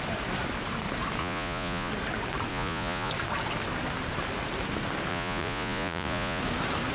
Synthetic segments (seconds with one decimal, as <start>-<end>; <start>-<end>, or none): 1.2-1.9; 2.5-3.1; 5.1-6.4